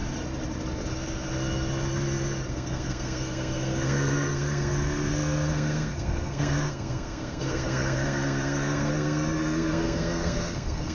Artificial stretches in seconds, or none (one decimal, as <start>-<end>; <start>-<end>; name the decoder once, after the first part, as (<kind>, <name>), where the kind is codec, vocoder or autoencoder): 2.5-10.9 (codec, SNAC)